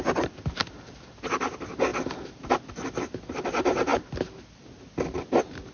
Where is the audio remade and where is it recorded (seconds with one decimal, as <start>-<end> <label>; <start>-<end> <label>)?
0.0-5.7 recorded